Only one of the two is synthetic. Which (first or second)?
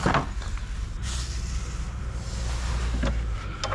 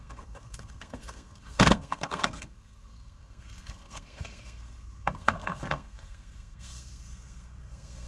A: second